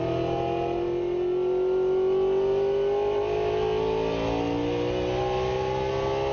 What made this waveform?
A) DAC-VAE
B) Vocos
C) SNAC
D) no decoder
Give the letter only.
D